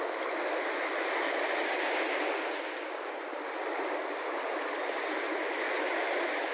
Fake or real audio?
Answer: real